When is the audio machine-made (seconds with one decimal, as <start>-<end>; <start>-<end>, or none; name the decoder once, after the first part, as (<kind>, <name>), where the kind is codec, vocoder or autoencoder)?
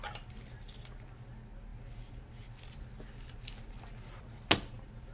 none